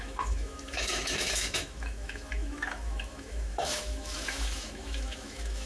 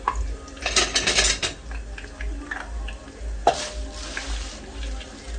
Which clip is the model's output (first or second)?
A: first